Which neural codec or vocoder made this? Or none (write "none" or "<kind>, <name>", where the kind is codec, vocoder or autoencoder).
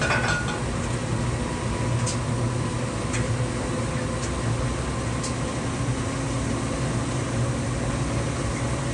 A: none